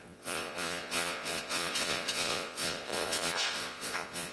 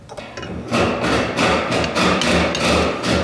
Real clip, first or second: second